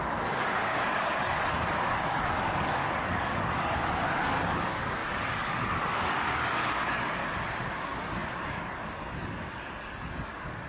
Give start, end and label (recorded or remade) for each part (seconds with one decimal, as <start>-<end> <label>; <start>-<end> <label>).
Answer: 0.0-7.2 remade; 7.2-7.8 recorded; 7.8-10.7 remade